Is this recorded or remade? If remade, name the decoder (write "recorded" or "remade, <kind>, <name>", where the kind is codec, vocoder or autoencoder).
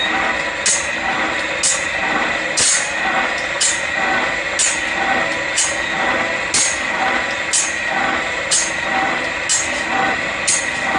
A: recorded